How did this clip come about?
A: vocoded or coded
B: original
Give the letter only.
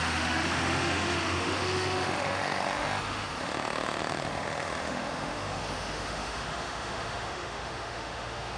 A